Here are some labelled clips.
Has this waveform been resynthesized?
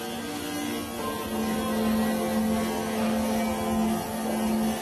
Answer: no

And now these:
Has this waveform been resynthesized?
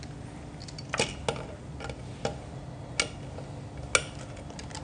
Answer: no